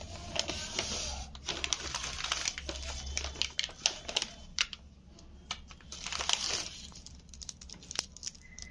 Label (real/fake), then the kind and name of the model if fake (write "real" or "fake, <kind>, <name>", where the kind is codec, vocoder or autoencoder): real